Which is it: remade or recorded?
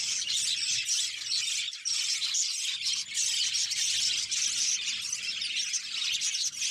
recorded